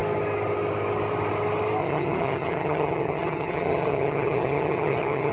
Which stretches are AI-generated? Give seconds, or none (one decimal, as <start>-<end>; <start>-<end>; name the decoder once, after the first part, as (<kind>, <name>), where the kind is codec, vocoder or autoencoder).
1.8-5.3 (vocoder, HiFi-GAN)